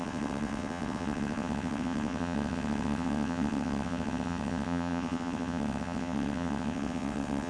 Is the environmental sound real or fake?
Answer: fake